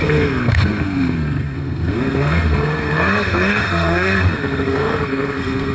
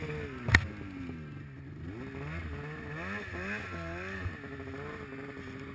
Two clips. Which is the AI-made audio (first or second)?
first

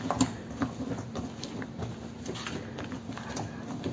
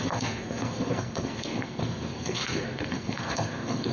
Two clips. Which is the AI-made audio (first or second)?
second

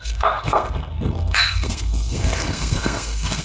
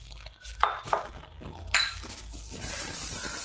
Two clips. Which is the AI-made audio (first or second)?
first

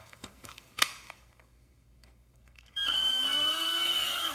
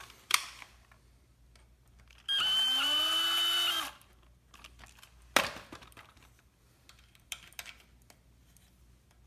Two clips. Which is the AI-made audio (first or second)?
first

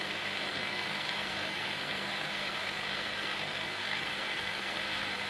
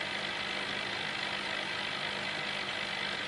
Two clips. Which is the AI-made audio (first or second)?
first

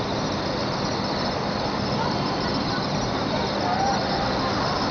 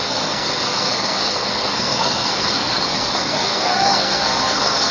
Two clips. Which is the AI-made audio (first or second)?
second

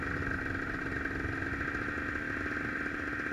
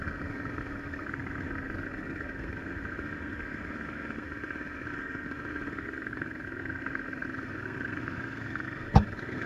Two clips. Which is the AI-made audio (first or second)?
second